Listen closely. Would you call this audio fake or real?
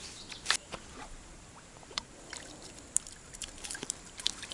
fake